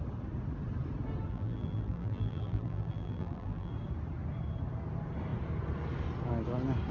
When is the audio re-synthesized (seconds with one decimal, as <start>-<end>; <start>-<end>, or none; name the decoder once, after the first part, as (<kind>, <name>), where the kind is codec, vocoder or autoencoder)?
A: 1.3-3.7 (vocoder, BigVGAN v2)